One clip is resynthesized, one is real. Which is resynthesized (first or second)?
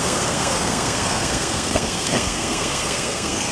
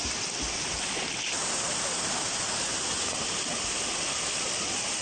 first